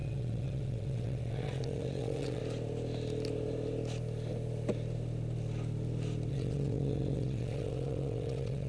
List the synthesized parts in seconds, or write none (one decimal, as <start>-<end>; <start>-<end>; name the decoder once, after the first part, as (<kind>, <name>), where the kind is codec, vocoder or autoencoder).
0.0-2.4 (vocoder, WaveNeXt); 6.3-8.7